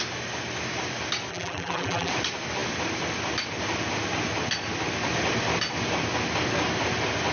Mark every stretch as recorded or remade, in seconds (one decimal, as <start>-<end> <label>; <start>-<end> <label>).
0.0-1.3 recorded; 1.3-2.1 remade; 2.1-7.3 recorded